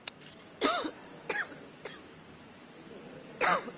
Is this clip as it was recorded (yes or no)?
yes